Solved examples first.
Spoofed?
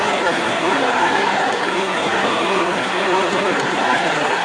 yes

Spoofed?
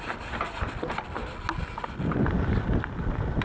no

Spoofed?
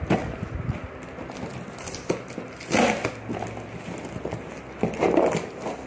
no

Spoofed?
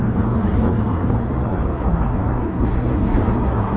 yes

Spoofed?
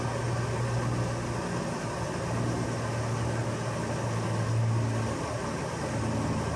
no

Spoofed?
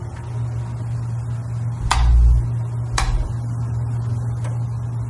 no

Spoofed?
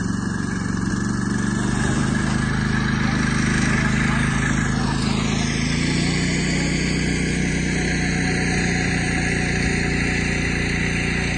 no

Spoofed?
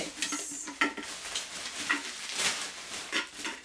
no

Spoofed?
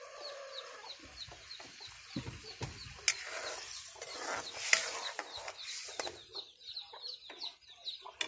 no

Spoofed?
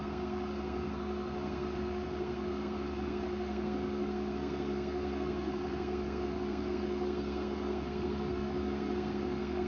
yes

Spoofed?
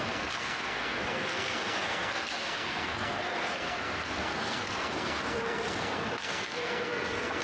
yes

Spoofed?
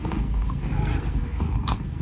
yes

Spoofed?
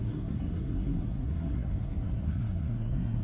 yes